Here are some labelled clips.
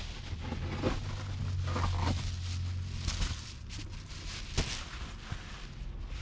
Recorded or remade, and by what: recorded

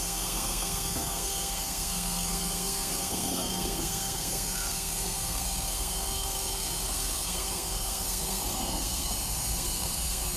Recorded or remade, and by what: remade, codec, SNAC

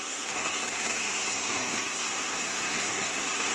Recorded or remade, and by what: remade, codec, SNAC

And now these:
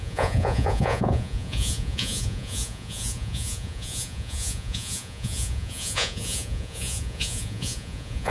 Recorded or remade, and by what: remade, vocoder, Vocos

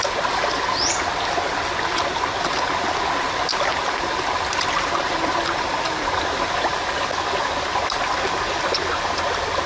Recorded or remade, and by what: recorded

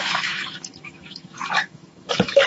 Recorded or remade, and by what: remade, autoencoder, DAC-VAE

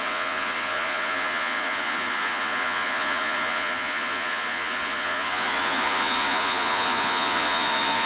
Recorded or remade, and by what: remade, vocoder, Vocos